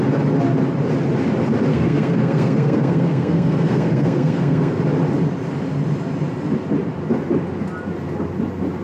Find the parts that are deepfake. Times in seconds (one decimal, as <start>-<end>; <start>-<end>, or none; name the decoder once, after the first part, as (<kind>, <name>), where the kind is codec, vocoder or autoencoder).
1.7-4.8 (codec, SNAC)